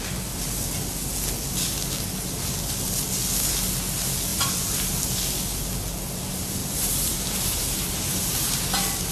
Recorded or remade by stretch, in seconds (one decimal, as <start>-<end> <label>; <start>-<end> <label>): 0.0-4.3 recorded; 4.3-4.9 remade; 4.9-6.6 recorded; 6.6-8.6 remade; 8.6-9.1 recorded